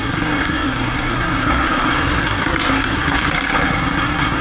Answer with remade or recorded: remade